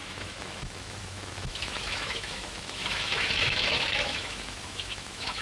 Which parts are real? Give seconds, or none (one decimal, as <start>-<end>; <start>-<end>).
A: none